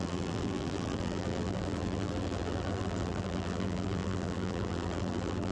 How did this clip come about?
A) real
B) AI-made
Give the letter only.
B